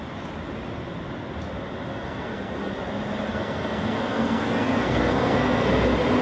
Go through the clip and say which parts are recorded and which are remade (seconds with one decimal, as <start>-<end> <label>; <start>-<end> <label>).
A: 0.0-1.9 recorded; 1.9-2.7 remade; 2.7-3.3 recorded; 3.3-5.7 remade; 5.7-6.2 recorded